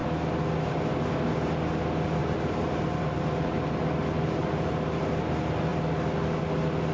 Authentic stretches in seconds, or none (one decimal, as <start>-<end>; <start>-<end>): 0.0-2.2; 3.7-4.4; 5.1-6.9